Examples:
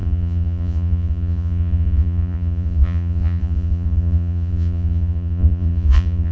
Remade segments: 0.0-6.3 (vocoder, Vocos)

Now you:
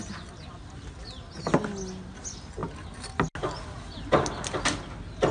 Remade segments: none

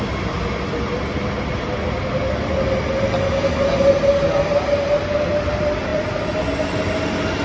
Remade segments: none

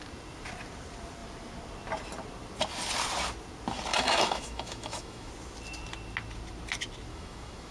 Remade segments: 3.9-5.3 (autoencoder, DAC-VAE); 7.1-7.7

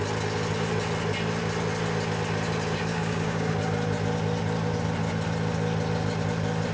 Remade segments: 2.9-3.5 (codec, DAC)

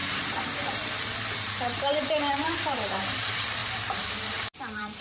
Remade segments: 0.0-5.0 (vocoder, BigVGAN v2)

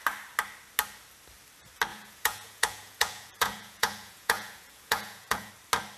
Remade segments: 1.9-5.5 (vocoder, Vocos)